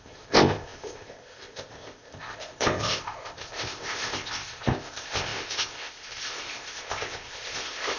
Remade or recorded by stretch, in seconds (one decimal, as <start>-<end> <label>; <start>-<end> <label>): 0.0-8.0 remade